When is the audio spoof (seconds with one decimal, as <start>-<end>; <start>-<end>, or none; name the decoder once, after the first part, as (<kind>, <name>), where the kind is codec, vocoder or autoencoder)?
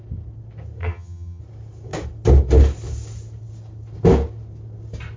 0.8-1.4 (vocoder, HiFi-GAN)